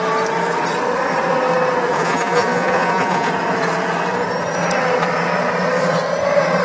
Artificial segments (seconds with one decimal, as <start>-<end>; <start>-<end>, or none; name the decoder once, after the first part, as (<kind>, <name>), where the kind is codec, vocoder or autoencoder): 1.9-3.3 (vocoder, Vocos)